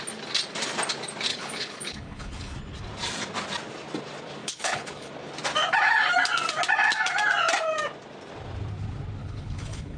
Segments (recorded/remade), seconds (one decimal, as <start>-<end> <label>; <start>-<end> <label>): 0.0-1.3 recorded; 1.3-2.5 remade; 2.5-4.4 recorded; 4.4-5.1 remade; 5.1-9.2 recorded; 9.2-10.0 remade